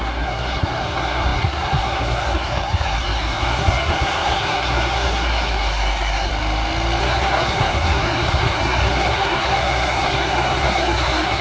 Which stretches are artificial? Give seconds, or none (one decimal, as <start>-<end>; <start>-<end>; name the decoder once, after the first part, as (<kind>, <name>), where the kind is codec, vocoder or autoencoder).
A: 0.0-6.3 (codec, SNAC); 7.0-11.4